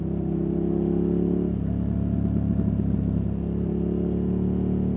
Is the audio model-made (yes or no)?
no